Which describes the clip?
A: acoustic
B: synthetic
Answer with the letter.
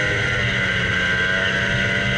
A